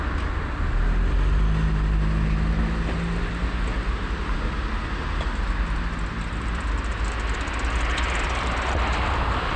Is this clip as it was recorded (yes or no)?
yes